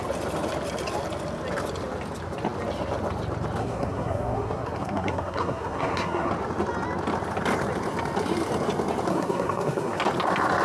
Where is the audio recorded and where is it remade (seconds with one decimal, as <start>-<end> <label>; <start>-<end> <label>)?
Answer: 0.0-3.6 recorded; 3.6-6.3 remade; 6.3-9.1 recorded; 9.1-10.0 remade; 10.0-10.6 recorded